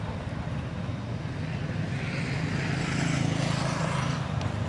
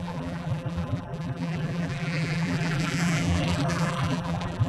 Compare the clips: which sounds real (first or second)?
first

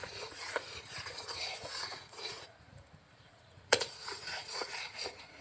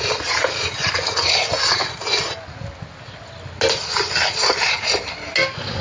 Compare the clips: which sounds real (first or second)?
second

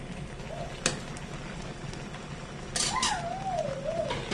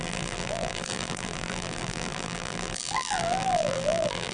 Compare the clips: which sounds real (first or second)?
first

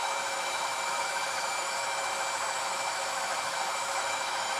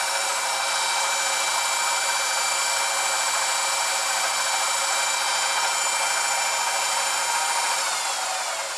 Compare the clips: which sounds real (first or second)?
second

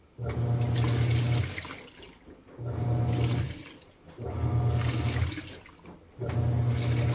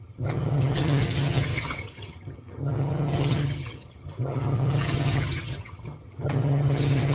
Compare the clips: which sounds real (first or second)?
first